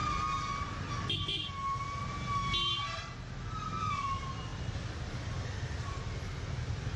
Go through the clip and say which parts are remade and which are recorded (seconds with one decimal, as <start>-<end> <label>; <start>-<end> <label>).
0.0-7.0 recorded